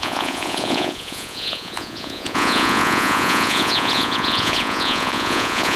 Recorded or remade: remade